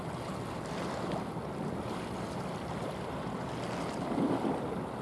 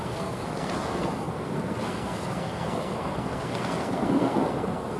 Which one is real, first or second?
first